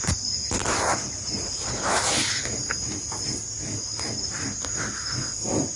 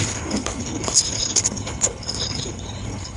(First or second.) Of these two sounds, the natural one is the first